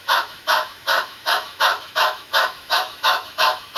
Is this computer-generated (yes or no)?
yes